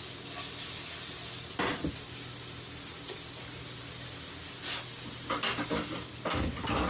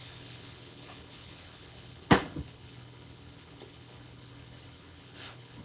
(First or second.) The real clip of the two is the first